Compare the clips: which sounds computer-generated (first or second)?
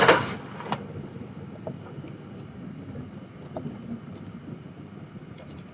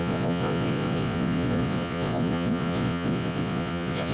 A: second